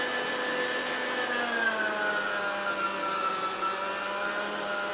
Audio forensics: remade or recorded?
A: recorded